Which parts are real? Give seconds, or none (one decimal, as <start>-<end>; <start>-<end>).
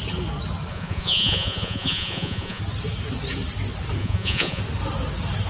0.0-0.7; 2.6-4.0; 4.6-5.5